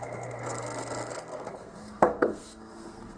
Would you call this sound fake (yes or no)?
yes